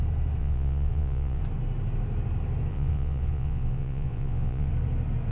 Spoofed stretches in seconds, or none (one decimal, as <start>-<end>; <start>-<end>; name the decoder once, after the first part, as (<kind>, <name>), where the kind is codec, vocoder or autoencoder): 0.4-1.4 (vocoder, Vocos); 2.7-4.7